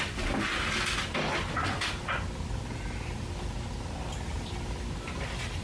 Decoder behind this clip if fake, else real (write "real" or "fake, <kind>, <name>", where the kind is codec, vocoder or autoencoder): real